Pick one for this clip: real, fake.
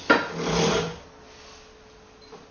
real